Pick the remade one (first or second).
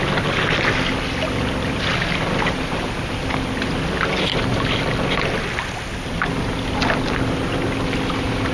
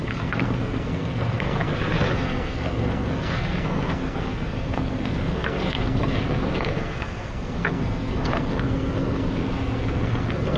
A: second